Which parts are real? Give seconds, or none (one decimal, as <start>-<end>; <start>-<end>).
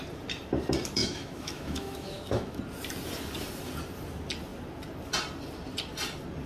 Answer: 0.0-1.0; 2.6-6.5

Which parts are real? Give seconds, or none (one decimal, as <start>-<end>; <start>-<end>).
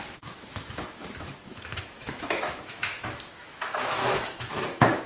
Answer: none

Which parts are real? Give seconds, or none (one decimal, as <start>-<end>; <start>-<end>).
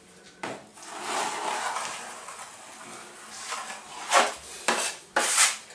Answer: 0.0-5.7